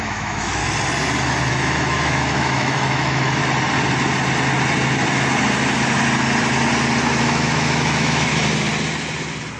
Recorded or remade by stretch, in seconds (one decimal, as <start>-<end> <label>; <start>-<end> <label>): 0.0-0.6 remade; 0.6-1.5 recorded; 1.5-3.4 remade; 3.4-7.2 recorded; 7.2-8.3 remade; 8.3-9.6 recorded